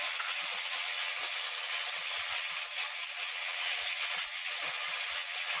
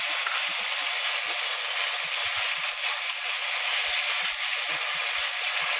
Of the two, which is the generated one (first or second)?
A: first